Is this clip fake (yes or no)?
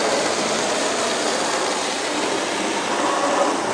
no